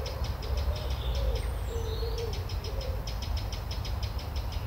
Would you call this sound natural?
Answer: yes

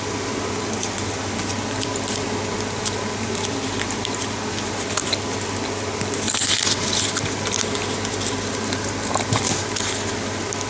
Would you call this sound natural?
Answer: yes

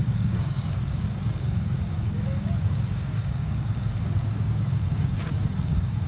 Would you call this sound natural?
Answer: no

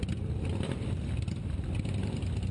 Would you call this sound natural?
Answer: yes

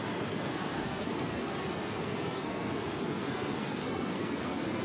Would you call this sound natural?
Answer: no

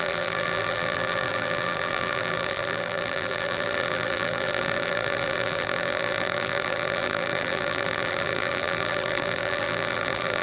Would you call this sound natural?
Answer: no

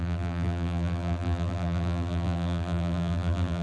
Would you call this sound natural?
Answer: no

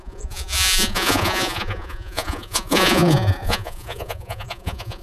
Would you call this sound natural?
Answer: no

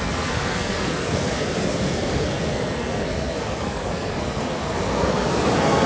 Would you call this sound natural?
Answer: no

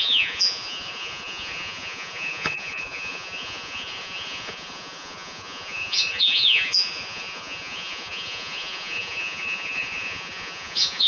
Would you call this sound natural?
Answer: no